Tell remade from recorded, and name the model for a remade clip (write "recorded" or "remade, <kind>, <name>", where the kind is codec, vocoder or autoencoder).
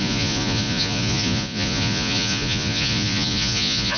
remade, vocoder, Vocos